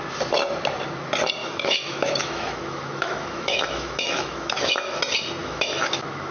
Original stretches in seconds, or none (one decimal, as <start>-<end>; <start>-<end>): 0.0-1.4; 5.0-5.4